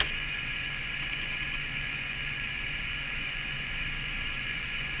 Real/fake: fake